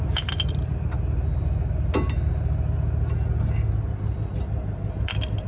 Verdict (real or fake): real